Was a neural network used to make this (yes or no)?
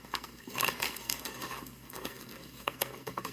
yes